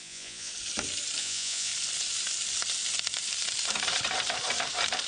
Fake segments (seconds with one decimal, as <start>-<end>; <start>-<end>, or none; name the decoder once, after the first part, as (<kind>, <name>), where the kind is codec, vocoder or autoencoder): 0.0-0.5 (vocoder, Vocos); 1.2-1.7